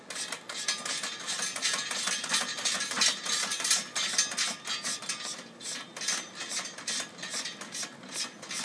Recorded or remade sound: recorded